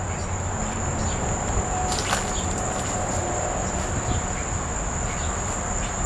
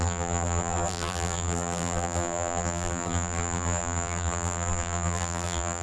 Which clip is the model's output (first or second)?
second